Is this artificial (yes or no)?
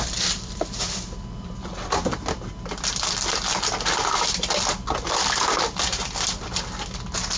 no